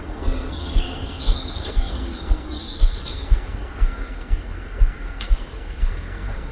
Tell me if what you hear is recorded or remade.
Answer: remade